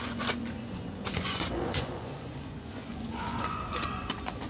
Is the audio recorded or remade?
remade